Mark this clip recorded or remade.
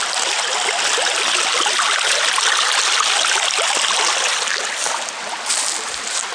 recorded